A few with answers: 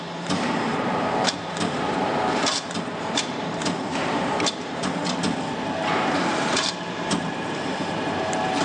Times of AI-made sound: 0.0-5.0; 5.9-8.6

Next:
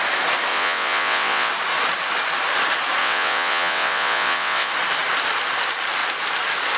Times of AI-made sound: 0.5-1.5; 3.0-4.7

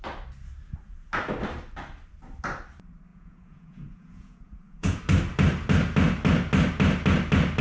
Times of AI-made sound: 3.1-5.0